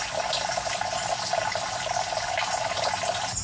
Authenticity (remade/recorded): recorded